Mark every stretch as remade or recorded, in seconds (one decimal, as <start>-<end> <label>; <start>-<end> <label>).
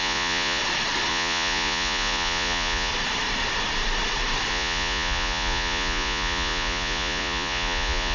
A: 0.0-0.6 remade; 0.6-1.1 recorded; 1.1-2.9 remade; 2.9-4.5 recorded; 4.5-8.1 remade